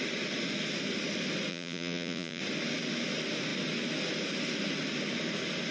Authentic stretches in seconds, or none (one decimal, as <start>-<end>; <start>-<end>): 0.0-1.5; 2.4-5.7